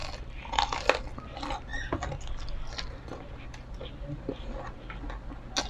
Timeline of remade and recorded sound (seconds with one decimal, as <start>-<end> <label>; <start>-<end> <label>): 0.0-5.7 recorded